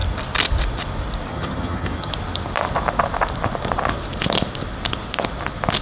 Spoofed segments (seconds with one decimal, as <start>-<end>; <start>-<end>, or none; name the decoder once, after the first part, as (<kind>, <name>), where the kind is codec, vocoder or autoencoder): 1.3-2.1 (vocoder, HiFi-GAN)